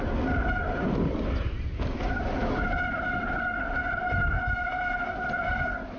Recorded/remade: recorded